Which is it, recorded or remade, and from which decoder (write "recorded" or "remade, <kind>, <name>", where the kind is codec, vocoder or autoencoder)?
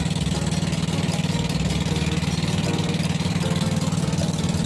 recorded